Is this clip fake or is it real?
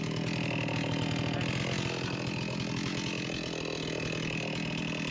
real